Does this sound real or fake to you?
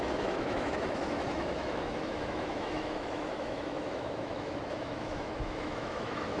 fake